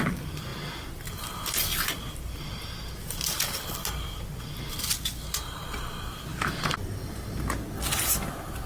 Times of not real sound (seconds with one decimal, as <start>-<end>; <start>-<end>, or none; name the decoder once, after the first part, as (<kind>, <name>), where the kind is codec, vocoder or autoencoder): none